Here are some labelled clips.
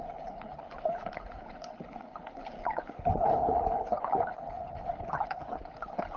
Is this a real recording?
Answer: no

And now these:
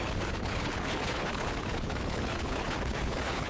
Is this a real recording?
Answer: no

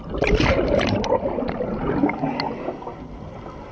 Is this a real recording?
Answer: yes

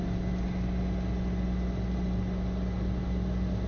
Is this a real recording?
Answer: yes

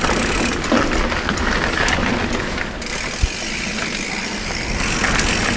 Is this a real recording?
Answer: yes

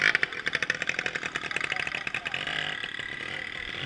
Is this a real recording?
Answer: yes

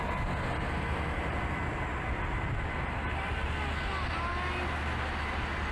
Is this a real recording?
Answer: yes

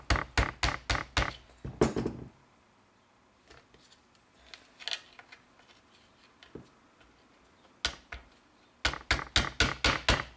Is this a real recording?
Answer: yes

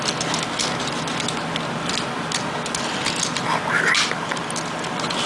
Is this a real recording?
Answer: yes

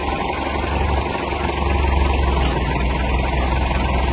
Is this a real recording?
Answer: yes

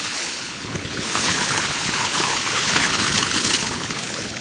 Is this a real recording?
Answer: no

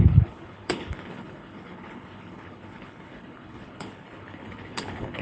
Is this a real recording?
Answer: no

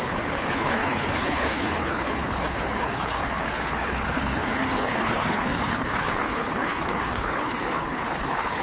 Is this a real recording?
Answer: no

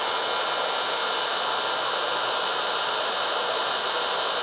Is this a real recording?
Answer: yes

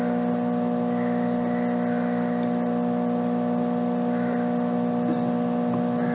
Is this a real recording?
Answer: yes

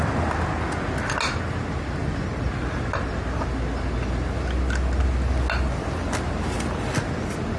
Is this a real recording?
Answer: yes